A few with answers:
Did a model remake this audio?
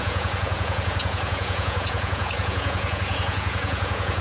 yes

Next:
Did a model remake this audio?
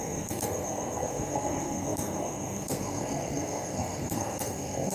yes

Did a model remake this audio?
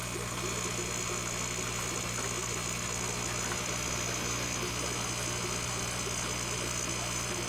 no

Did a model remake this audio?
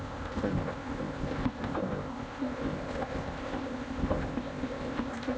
yes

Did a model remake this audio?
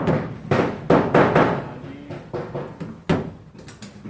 no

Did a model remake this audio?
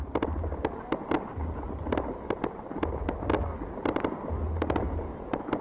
no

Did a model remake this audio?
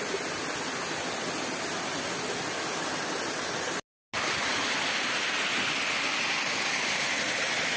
no